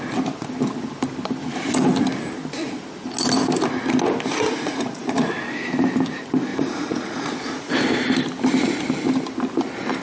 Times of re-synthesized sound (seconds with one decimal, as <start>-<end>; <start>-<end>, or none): 4.3-5.3; 6.5-7.7